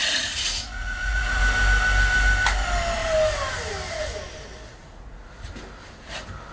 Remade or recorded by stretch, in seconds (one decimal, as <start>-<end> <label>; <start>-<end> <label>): 0.0-1.4 remade; 1.4-4.7 recorded; 4.7-5.5 remade; 5.5-6.5 recorded